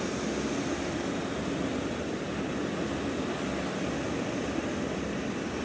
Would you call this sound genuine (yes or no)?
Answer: yes